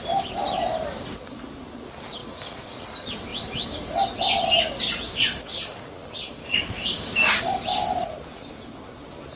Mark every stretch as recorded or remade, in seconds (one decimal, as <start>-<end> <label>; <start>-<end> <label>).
0.0-2.2 recorded; 2.2-2.8 remade; 2.8-6.4 recorded; 6.4-7.6 remade; 7.6-9.4 recorded